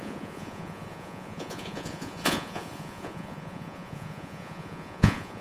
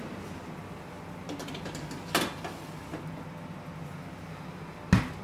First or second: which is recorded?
second